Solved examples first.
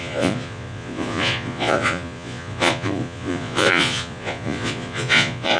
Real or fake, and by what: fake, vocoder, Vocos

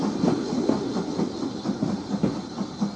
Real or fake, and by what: real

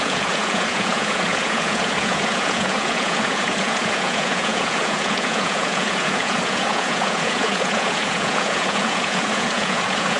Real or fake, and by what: fake, vocoder, Vocos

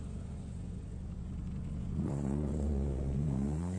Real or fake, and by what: fake, vocoder, Vocos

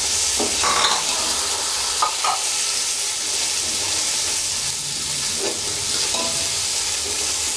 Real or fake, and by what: real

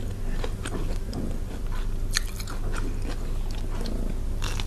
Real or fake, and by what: real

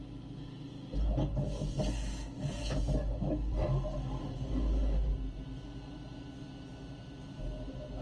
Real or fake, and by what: real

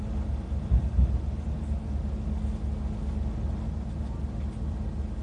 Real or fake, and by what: real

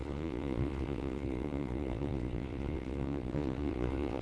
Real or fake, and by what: fake, vocoder, Vocos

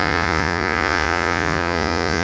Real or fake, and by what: fake, vocoder, Vocos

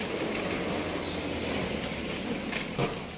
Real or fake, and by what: real